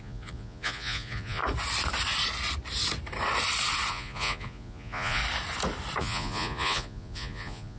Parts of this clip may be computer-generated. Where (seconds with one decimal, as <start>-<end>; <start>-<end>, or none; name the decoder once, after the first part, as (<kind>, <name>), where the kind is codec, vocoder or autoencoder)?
0.0-1.4 (vocoder, Vocos); 3.9-5.2; 6.0-7.8